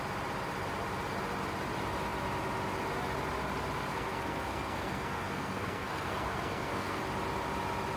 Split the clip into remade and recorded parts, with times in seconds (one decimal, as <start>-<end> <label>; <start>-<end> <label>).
0.0-3.9 recorded; 3.9-7.0 remade; 7.0-8.0 recorded